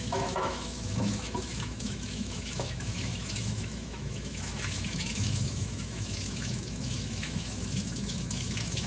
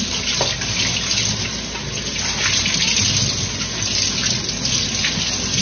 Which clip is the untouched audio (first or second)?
second